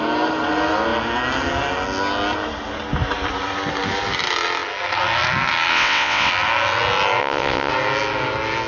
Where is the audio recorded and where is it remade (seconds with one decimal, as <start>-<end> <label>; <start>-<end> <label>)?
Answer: 0.0-5.7 recorded; 5.7-6.3 remade; 6.3-7.2 recorded; 7.2-7.7 remade; 7.7-8.7 recorded